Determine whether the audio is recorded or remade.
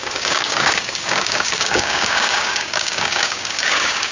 remade